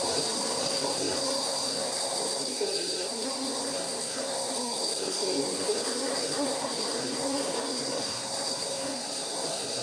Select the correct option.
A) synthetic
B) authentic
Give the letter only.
A